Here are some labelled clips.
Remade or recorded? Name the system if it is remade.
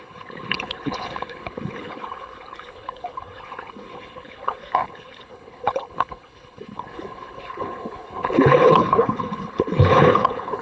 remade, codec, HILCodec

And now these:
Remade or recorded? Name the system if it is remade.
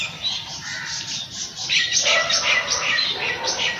remade, vocoder, BigVGAN v2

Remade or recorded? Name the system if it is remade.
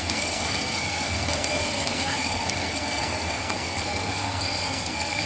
remade, codec, SNAC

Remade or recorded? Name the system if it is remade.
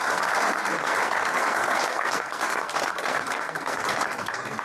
remade, codec, SNAC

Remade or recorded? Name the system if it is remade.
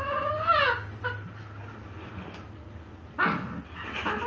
recorded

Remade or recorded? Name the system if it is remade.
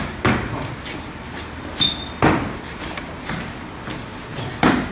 recorded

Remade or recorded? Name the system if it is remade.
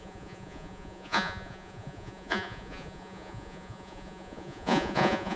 remade, vocoder, Vocos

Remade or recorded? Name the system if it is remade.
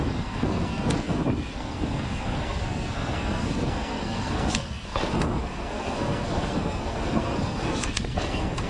remade, codec, SNAC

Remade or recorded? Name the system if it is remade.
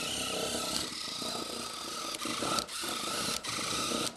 recorded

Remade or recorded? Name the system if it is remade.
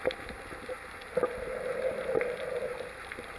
recorded